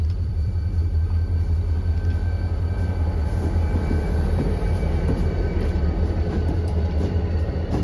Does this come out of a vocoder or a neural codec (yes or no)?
yes